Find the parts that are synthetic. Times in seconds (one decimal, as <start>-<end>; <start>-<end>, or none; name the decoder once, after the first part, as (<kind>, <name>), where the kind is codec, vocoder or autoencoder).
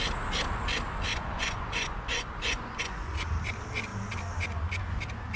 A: 1.1-3.3 (vocoder, Vocos)